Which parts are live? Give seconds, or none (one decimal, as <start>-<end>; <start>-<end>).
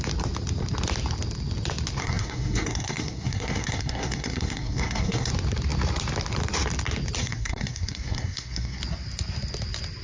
0.0-2.0; 5.3-7.2; 8.8-10.0